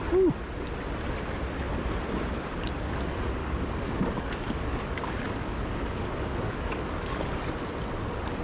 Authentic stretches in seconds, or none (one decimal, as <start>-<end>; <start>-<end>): 0.0-3.4; 7.2-8.4